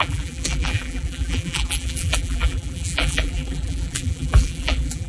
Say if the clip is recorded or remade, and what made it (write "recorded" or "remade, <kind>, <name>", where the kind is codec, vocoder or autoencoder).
remade, vocoder, BigVGAN v2